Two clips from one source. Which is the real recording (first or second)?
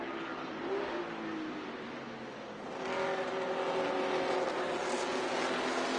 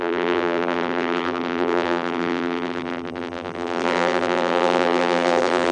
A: first